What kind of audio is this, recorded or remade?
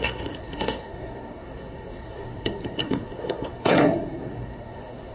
remade